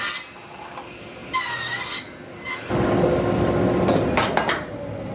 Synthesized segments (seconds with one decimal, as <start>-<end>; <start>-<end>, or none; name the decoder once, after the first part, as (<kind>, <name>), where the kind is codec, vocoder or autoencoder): none